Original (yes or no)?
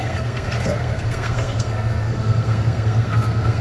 no